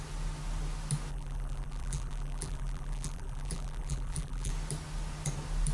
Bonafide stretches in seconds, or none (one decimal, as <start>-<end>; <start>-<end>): 0.0-1.1; 4.5-5.7